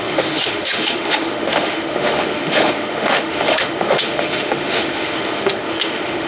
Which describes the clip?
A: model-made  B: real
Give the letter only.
A